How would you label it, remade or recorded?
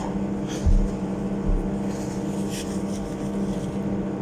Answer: recorded